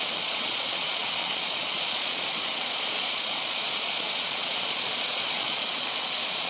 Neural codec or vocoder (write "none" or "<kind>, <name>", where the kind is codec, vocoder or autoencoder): vocoder, Vocos